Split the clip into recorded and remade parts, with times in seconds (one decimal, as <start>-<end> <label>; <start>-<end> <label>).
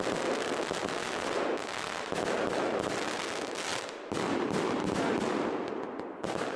0.0-3.7 recorded; 3.7-5.7 remade; 5.7-6.6 recorded